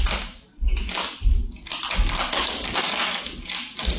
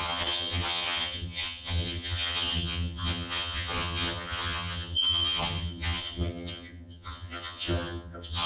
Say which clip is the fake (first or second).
second